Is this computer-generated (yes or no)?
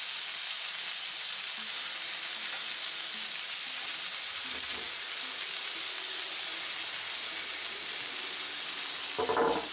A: no